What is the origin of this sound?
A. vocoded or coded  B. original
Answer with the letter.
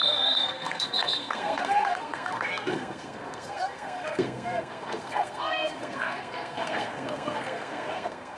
A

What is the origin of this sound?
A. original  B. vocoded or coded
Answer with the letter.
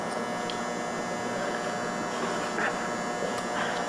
A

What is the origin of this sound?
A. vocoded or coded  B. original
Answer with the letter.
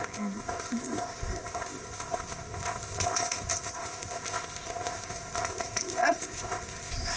A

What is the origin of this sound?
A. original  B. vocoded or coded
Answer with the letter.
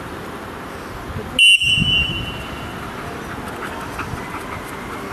A